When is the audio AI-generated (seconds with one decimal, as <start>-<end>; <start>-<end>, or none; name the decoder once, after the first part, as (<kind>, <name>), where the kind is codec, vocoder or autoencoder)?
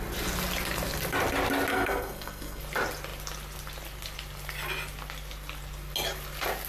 1.7-2.6 (codec, SNAC)